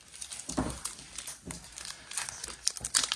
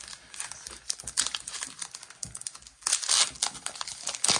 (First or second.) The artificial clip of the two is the first